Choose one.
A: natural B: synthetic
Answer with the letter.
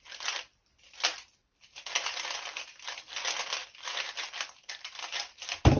A